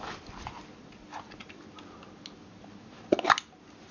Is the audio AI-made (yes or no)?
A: no